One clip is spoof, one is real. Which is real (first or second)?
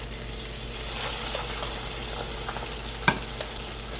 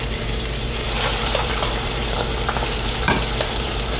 first